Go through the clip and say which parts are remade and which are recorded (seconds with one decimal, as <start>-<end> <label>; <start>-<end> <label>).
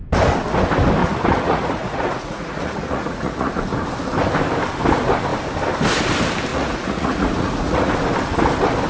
0.0-1.0 recorded; 1.0-3.6 remade; 3.6-6.5 recorded; 6.5-7.9 remade; 7.9-8.9 recorded